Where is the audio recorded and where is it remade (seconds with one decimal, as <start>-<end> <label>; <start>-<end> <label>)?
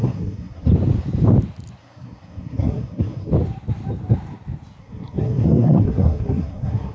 0.0-0.7 remade; 0.7-1.8 recorded; 1.8-3.3 remade; 3.3-4.8 recorded; 4.8-6.9 remade